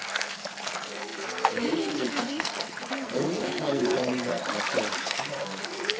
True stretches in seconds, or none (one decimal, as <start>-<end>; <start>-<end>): 4.4-5.0